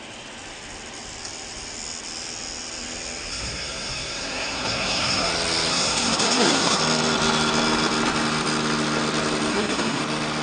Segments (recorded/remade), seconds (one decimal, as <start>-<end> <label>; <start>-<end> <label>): 0.0-3.3 recorded; 3.3-5.3 remade; 5.3-5.7 recorded; 5.7-6.8 remade; 6.8-9.5 recorded; 9.5-10.0 remade; 10.0-10.4 recorded